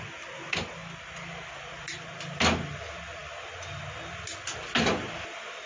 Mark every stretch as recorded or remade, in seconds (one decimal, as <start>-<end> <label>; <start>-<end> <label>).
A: 0.0-5.7 recorded